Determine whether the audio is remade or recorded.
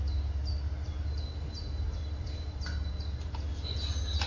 recorded